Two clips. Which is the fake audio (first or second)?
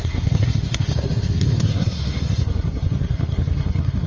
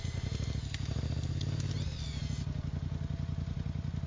first